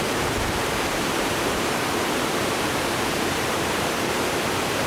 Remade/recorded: remade